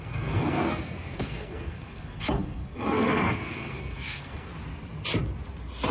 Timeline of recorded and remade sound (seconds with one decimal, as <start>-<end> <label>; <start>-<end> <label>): 0.0-4.5 remade; 4.5-5.9 recorded